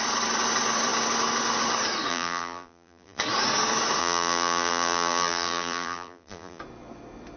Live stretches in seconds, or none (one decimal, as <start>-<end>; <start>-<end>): 0.0-2.1; 3.2-4.0; 6.6-7.4